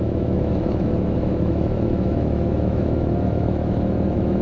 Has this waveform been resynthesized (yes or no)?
yes